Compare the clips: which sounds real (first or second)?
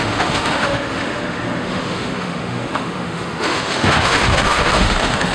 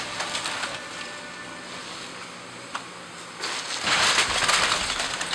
second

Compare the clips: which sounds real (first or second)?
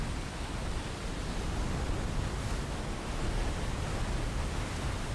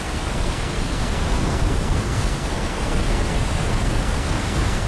first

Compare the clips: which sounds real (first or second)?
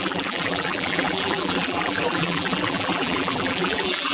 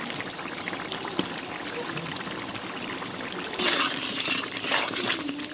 second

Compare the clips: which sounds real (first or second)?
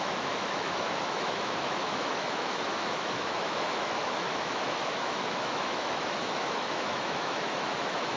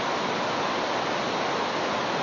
second